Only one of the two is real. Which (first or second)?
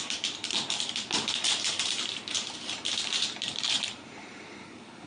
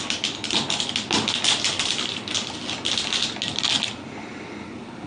second